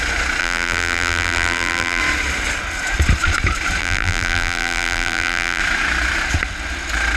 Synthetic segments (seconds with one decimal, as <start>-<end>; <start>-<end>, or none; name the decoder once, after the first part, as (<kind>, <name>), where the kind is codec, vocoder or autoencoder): 0.4-2.0 (vocoder, BigVGAN v2); 3.8-5.6